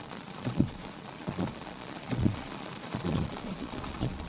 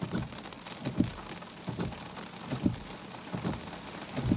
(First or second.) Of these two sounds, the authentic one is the second